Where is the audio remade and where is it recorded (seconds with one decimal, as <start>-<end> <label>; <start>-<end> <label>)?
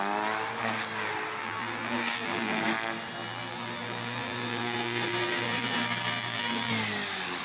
0.0-1.4 recorded; 1.4-2.6 remade; 2.6-3.2 recorded; 3.2-6.7 remade; 6.7-7.4 recorded